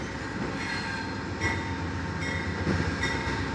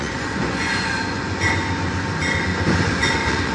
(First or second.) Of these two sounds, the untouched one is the first